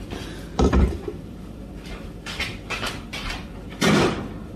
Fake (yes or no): yes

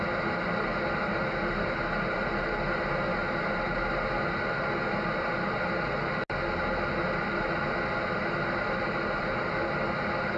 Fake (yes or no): no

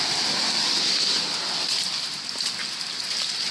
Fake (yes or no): no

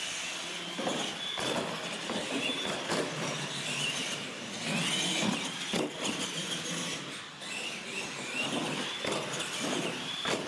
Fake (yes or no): no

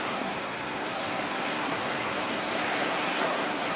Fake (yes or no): yes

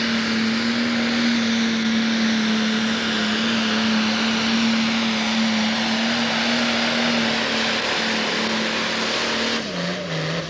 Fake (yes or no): no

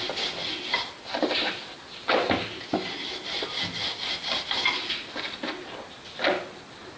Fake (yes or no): no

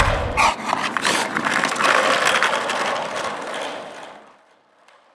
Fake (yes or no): no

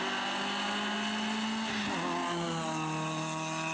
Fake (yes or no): no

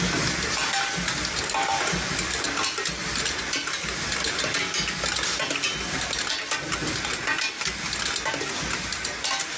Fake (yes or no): no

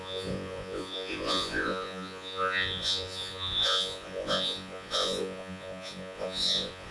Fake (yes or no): yes